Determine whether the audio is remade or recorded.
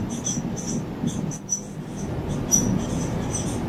recorded